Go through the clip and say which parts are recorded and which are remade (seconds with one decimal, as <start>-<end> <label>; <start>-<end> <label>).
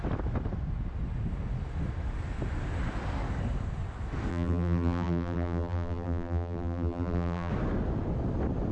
0.0-4.3 recorded; 4.3-7.5 remade; 7.5-8.7 recorded